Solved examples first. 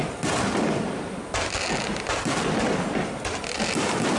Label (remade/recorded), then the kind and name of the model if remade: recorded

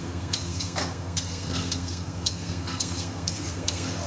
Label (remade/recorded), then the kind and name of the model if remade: remade, codec, SNAC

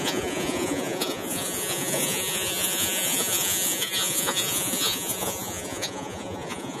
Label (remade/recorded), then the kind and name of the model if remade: remade, vocoder, Vocos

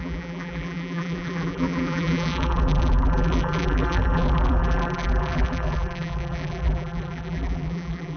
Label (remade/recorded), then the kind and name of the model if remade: remade, vocoder, BigVGAN v2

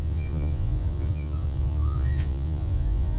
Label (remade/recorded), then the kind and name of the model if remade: remade, vocoder, Vocos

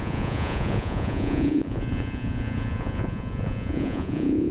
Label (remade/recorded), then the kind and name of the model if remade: remade, vocoder, Vocos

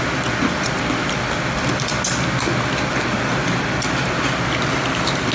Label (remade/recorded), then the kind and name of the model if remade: recorded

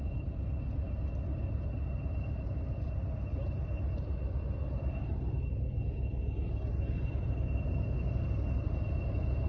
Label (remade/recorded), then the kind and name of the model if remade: recorded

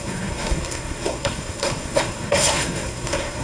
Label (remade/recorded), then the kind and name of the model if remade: remade, codec, SNAC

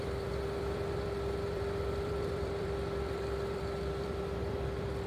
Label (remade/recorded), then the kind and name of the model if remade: remade, vocoder, BigVGAN v2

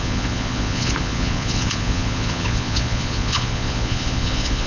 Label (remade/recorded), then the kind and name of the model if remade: remade, vocoder, Vocos